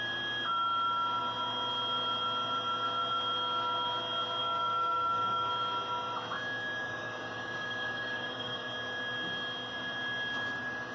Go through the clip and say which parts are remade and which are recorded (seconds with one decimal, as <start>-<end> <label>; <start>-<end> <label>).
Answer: 0.0-4.4 recorded; 4.4-5.5 remade; 5.5-6.8 recorded; 6.8-8.7 remade; 8.7-10.9 recorded